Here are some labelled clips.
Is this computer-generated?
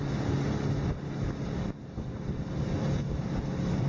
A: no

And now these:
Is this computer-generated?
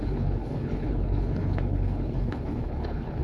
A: yes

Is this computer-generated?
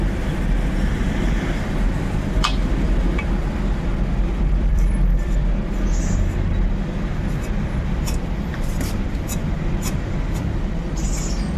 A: yes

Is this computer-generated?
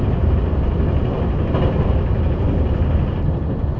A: no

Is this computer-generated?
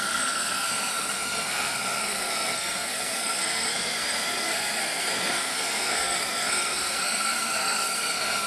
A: yes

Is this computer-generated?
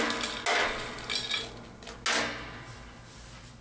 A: no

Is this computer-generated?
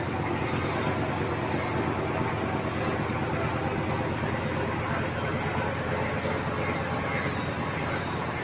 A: no